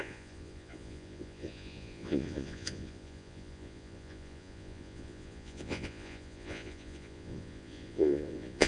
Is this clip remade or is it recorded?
remade